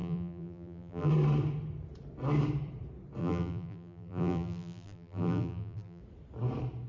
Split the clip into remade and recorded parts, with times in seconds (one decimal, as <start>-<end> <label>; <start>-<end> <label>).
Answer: 0.0-1.1 remade; 1.1-3.2 recorded; 3.2-6.0 remade; 6.0-6.9 recorded